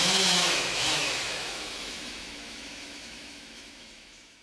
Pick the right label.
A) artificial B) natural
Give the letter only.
A